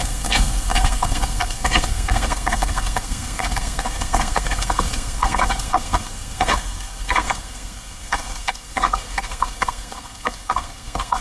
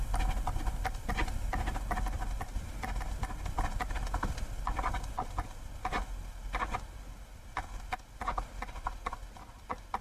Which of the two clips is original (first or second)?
second